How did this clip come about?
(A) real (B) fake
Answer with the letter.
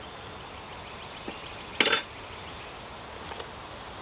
A